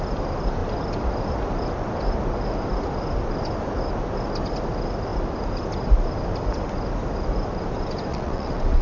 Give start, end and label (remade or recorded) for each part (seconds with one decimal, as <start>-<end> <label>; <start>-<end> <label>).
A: 0.0-8.1 recorded; 8.1-8.8 remade